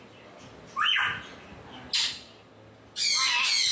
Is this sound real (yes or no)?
yes